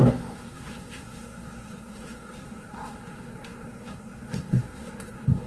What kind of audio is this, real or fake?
fake